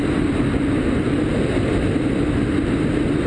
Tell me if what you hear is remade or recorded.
recorded